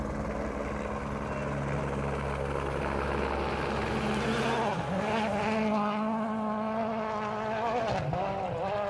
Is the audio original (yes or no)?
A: yes